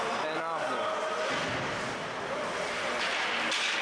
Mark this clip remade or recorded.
recorded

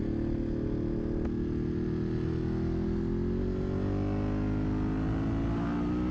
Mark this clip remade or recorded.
recorded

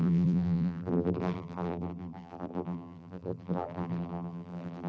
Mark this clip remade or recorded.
remade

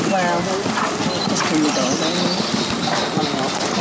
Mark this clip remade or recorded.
recorded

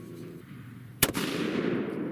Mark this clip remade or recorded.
remade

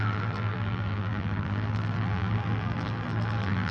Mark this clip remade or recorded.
remade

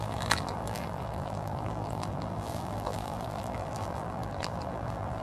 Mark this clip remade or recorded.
remade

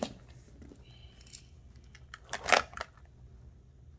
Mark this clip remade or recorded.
recorded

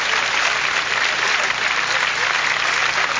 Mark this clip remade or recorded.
recorded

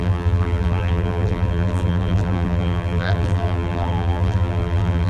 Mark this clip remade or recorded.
remade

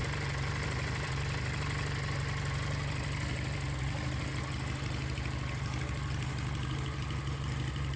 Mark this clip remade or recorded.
recorded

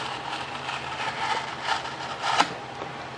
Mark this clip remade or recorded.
remade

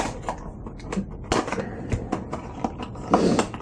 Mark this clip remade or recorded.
recorded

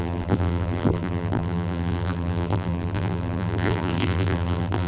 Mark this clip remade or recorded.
remade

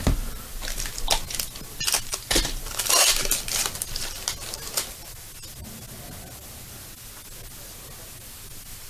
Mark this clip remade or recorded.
recorded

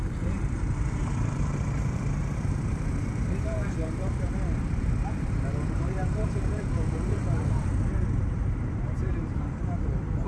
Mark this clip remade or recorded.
remade